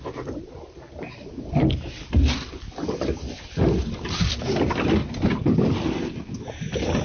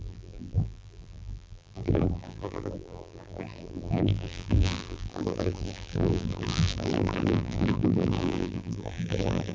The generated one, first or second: second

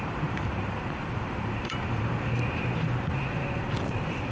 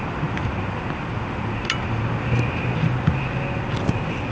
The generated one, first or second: first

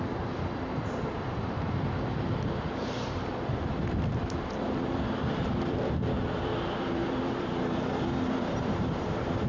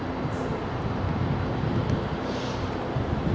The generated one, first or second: first